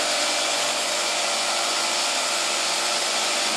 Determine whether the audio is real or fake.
fake